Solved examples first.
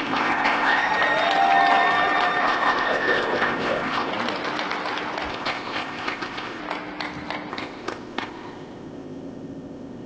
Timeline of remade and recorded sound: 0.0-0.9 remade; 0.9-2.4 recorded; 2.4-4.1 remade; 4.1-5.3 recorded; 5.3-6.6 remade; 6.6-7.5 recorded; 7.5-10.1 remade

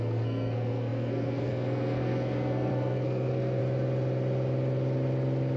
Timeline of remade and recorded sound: 0.0-3.6 remade; 3.6-5.6 recorded

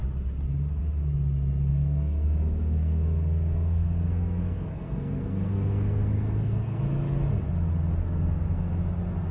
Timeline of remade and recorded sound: 0.0-1.7 recorded; 1.7-6.8 remade; 6.8-8.0 recorded; 8.0-8.8 remade; 8.8-9.3 recorded

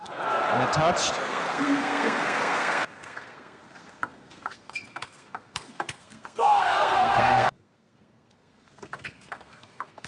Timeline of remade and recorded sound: 0.0-0.4 remade; 0.4-1.2 recorded; 1.2-10.1 remade

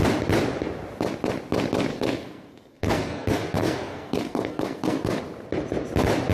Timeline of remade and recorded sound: 0.0-1.9 recorded; 1.9-5.2 remade; 5.2-6.3 recorded